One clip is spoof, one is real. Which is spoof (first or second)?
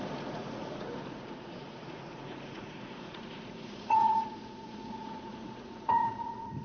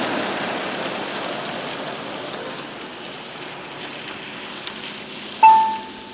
first